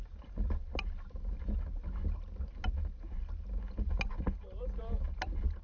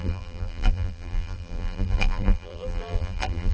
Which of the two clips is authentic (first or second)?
first